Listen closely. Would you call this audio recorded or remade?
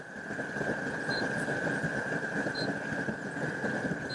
remade